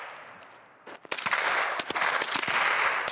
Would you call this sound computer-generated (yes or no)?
no